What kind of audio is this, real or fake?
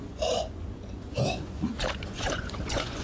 fake